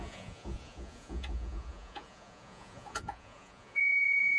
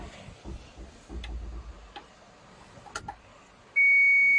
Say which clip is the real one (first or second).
second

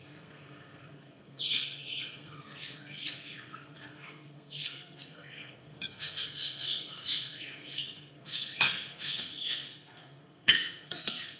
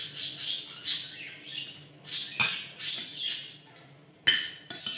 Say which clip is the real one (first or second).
second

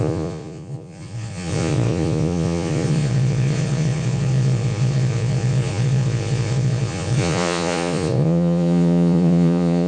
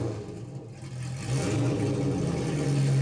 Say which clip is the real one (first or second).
second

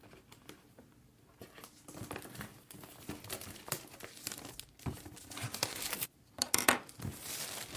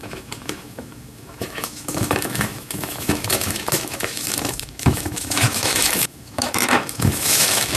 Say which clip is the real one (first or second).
first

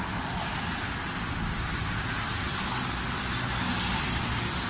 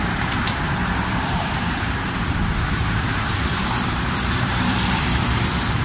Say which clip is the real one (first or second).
first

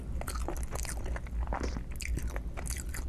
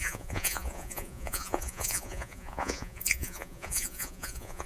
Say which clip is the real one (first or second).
first